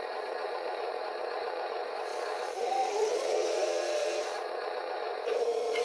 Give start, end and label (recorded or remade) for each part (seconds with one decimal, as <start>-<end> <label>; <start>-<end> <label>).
0.0-5.8 remade